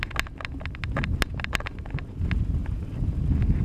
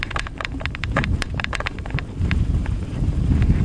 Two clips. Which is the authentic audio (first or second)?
first